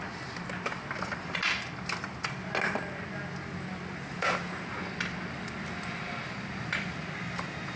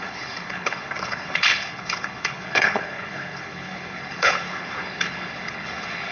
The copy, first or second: second